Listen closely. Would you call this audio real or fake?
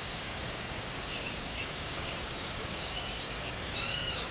fake